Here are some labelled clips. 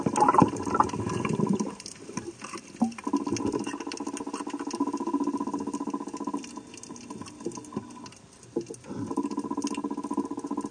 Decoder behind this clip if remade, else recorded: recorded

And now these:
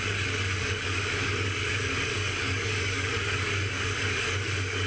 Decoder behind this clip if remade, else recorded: remade, codec, DAC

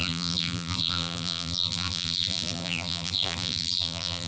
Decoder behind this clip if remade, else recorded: remade, vocoder, BigVGAN v2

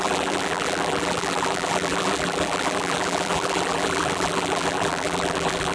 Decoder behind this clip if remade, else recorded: remade, vocoder, BigVGAN v2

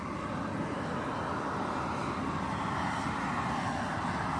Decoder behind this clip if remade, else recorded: recorded